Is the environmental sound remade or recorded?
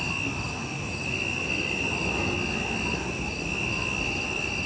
recorded